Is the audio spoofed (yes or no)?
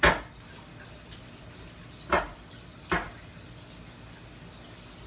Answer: no